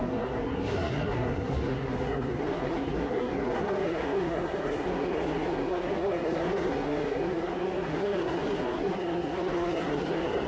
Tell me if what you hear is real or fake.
fake